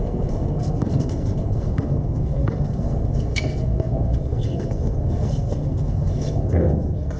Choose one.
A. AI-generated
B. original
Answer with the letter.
A